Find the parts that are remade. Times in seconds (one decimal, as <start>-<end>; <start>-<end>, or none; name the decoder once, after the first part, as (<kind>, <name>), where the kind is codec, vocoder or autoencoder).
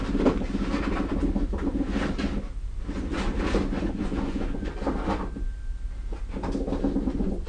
3.9-4.7 (vocoder, Vocos); 7.0-7.5